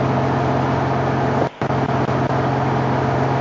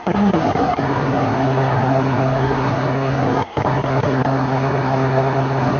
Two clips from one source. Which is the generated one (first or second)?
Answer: second